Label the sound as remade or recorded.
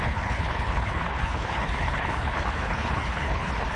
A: remade